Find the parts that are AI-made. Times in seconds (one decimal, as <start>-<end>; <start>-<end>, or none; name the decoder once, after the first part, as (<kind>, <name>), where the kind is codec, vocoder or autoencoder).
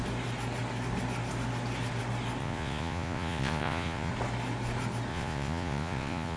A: 2.4-4.1 (vocoder, Vocos); 5.1-6.4